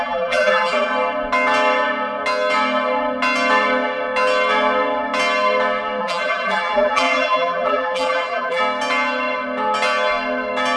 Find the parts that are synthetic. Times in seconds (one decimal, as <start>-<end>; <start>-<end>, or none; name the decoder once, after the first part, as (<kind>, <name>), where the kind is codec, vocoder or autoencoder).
0.0-0.9 (vocoder, BigVGAN v2); 6.0-8.6